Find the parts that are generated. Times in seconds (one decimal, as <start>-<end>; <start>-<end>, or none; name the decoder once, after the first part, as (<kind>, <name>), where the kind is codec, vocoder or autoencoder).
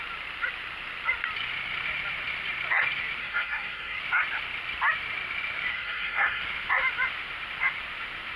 3.2-4.0 (codec, SNAC); 5.7-6.4